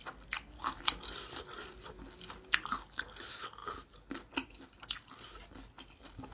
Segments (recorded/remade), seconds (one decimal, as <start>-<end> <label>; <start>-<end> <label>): 0.0-6.3 recorded